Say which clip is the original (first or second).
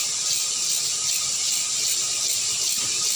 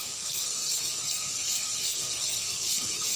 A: first